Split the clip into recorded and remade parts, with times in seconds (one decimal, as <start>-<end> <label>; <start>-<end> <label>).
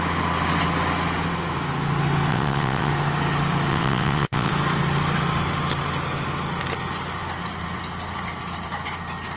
0.0-2.3 recorded; 2.3-2.9 remade; 2.9-3.7 recorded; 3.7-4.5 remade; 4.5-9.4 recorded